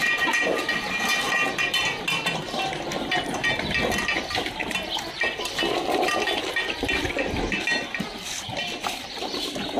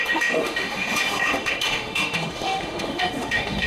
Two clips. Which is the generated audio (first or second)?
second